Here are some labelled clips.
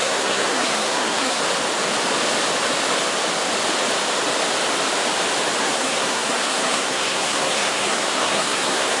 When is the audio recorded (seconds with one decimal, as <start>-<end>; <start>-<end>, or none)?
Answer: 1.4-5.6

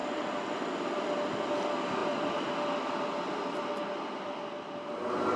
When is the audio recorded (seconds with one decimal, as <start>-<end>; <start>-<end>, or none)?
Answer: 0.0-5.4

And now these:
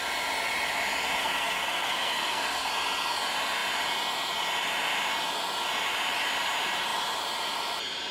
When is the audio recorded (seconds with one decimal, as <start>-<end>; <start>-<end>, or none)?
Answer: 0.0-1.2; 2.7-8.1

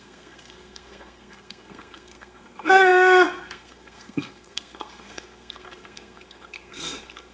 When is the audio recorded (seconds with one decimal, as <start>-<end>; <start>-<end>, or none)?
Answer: none